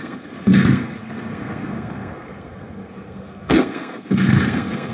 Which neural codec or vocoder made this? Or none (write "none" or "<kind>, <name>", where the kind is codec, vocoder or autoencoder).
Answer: codec, SNAC